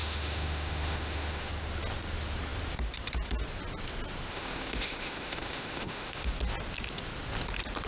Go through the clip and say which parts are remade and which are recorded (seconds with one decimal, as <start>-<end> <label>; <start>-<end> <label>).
0.0-1.5 remade; 1.5-4.3 recorded; 4.3-6.3 remade; 6.3-7.9 recorded